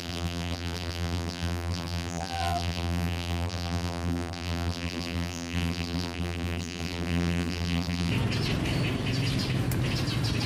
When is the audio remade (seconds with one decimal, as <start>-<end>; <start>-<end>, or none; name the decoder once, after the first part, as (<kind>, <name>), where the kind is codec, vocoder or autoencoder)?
0.0-8.1 (vocoder, BigVGAN v2)